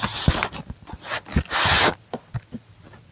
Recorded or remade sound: recorded